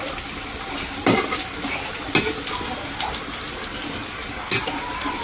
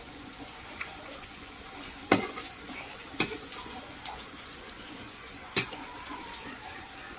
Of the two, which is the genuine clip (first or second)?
first